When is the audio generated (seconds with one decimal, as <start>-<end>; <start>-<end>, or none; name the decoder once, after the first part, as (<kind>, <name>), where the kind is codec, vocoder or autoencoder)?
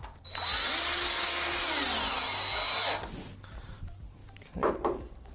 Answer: 0.0-0.5 (vocoder, BigVGAN v2); 3.6-4.2; 4.7-5.3